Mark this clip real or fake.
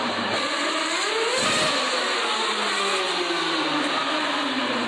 real